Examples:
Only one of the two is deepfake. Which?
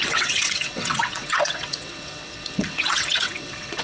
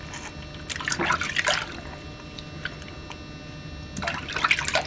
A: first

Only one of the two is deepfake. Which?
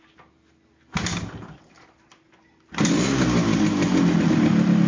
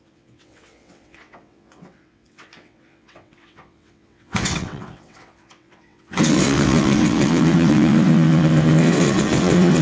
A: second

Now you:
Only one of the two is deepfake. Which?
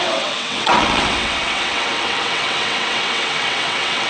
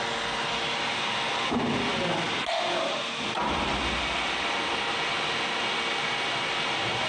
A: first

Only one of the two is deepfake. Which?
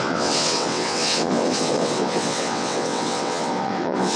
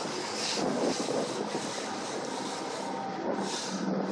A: first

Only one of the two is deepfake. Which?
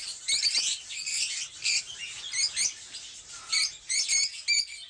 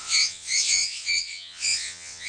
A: second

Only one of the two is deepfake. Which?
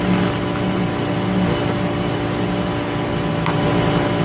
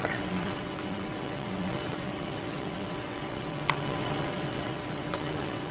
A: second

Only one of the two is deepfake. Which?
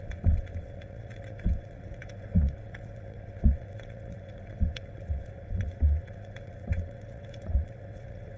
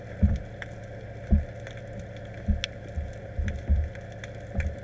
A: first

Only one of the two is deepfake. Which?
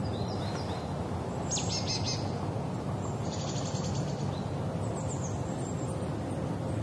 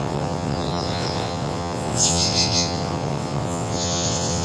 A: second